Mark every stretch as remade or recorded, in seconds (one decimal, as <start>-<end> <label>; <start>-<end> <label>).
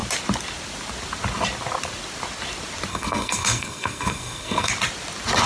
0.0-2.9 recorded; 2.9-4.7 remade; 4.7-5.5 recorded